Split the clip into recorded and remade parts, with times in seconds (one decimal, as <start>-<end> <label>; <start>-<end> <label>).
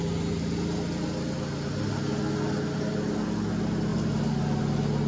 0.0-3.9 recorded; 3.9-4.6 remade; 4.6-5.1 recorded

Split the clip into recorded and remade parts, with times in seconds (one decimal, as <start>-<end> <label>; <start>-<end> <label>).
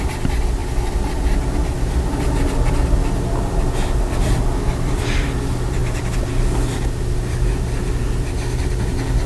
0.0-0.6 remade; 0.6-4.7 recorded; 4.7-9.3 remade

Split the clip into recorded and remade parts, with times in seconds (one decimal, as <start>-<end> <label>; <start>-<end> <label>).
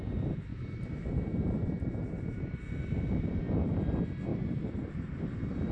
0.0-0.5 recorded; 0.5-3.4 remade; 3.4-4.3 recorded; 4.3-5.7 remade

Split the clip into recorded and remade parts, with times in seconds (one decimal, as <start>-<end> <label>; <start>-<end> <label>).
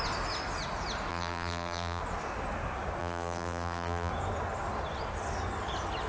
0.0-1.1 recorded; 1.1-2.0 remade; 2.0-3.0 recorded; 3.0-4.1 remade; 4.1-6.1 recorded